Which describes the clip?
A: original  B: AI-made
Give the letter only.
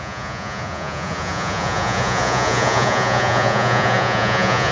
B